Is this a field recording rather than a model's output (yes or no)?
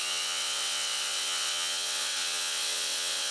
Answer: no